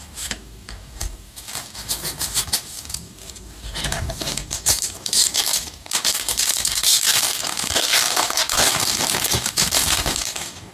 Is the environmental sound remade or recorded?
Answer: remade